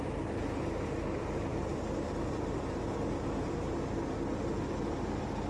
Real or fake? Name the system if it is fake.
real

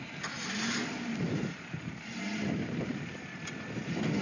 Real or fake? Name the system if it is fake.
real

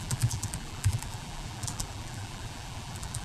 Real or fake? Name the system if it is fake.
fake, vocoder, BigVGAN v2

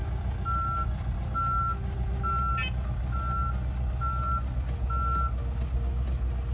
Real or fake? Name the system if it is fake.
real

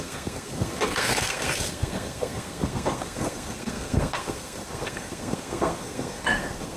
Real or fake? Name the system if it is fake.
fake, codec, SNAC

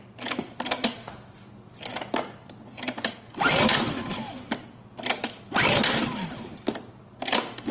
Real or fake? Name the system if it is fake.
real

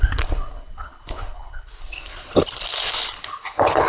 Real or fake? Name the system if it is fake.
fake, codec, HILCodec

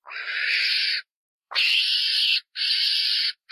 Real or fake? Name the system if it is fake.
fake, vocoder, BigVGAN v2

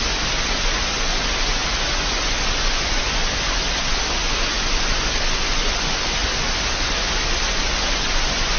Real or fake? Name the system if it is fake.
fake, vocoder, Vocos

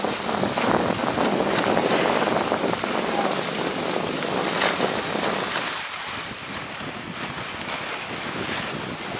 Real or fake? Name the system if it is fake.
real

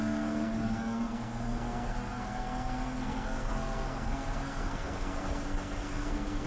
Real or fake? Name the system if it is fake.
fake, codec, SNAC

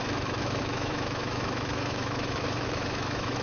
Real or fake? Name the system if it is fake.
fake, autoencoder, DAC-VAE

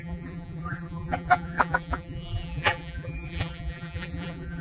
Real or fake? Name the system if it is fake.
fake, vocoder, BigVGAN v2